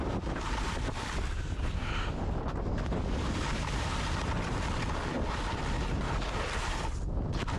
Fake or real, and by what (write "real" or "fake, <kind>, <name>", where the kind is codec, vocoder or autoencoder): real